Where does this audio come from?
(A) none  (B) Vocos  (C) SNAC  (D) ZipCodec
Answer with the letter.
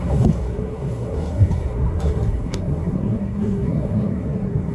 C